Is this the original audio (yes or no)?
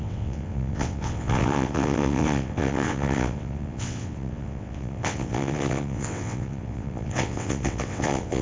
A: no